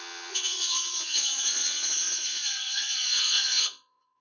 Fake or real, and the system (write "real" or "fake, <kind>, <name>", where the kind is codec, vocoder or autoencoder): fake, vocoder, Vocos